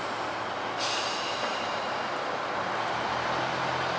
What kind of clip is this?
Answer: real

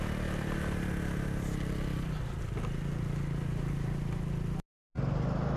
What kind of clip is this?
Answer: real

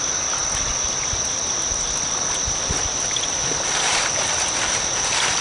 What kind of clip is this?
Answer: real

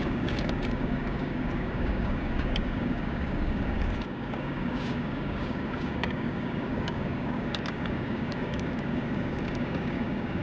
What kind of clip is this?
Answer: fake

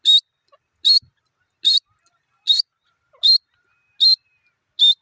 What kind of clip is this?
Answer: real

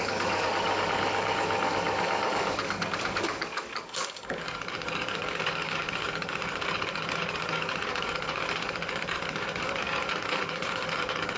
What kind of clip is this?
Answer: fake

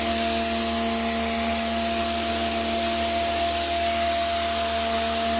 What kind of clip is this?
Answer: real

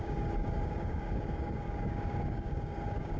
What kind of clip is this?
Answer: fake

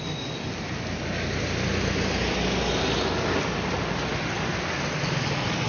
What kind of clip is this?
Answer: real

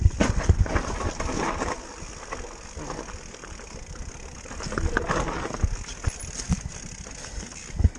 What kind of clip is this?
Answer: real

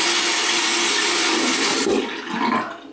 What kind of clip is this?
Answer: real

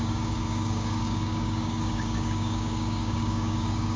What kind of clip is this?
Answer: fake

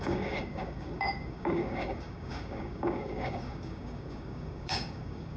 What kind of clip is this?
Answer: fake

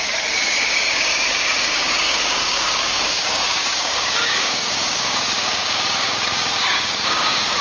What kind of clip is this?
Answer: fake